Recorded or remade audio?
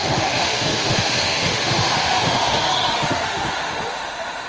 remade